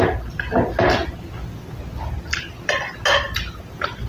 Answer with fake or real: real